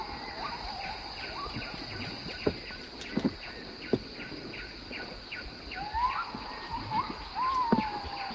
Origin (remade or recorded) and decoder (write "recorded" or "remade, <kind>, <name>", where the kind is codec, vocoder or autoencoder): recorded